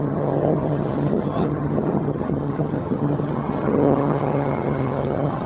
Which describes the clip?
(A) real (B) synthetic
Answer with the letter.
B